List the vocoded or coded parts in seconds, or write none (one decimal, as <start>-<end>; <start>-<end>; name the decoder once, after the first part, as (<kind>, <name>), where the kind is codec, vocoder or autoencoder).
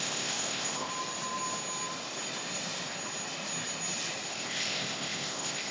0.0-0.9 (codec, ZipCodec); 4.3-5.7